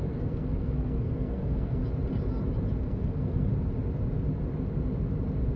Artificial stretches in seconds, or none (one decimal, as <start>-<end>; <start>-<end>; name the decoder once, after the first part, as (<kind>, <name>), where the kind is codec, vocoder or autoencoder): 0.0-1.8 (codec, SNAC); 2.8-3.5